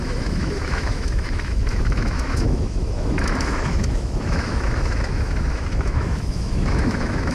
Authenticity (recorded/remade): remade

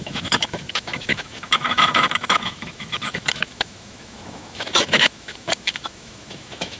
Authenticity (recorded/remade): remade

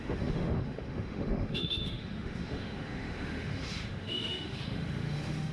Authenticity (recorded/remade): remade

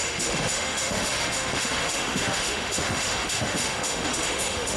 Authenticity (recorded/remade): remade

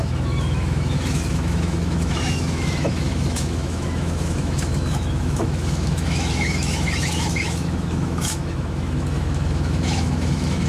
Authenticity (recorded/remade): remade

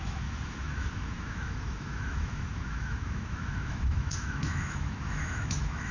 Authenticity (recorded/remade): remade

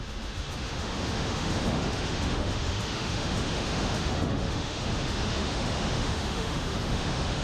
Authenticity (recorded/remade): remade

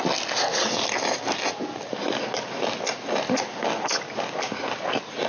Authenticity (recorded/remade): recorded